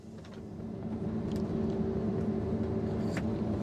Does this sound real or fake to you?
real